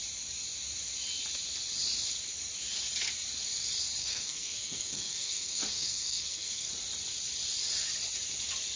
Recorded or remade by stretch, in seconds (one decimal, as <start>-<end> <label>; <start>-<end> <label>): 0.0-4.0 recorded; 4.0-6.7 remade; 6.7-8.8 recorded